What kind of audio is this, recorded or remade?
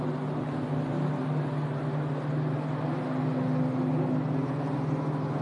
recorded